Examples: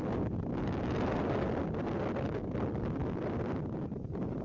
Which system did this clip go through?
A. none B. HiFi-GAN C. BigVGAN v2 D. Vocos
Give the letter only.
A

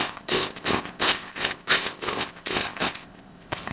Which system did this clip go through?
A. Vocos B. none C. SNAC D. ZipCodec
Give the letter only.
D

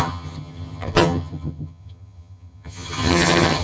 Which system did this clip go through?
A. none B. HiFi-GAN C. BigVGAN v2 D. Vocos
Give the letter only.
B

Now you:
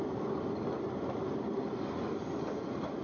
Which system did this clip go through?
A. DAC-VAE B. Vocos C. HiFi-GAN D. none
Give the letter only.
D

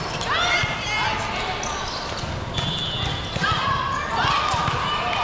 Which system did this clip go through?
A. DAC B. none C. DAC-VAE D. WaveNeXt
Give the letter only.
B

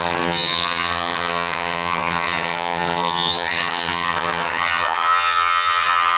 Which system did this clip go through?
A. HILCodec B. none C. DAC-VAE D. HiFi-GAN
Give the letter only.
D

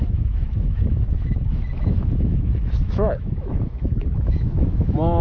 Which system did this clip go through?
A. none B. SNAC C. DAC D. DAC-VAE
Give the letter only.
D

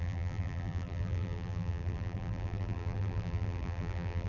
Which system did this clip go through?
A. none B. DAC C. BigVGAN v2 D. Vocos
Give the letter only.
C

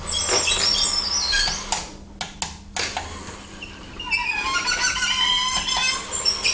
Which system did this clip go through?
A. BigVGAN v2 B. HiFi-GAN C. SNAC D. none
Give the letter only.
D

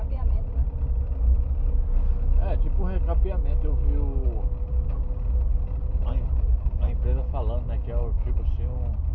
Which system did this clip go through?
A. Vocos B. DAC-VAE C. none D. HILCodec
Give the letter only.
C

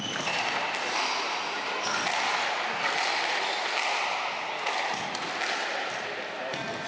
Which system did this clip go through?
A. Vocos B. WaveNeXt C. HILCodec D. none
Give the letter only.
D